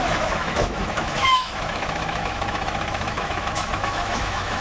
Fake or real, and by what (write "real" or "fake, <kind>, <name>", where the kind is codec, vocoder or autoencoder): fake, autoencoder, DAC-VAE